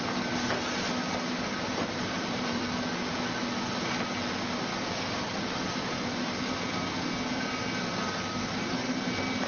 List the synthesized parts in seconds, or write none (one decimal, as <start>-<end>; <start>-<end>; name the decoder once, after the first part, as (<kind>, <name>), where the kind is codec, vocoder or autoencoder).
1.5-2.6 (vocoder, BigVGAN v2)